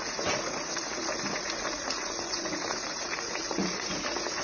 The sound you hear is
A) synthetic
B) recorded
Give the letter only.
A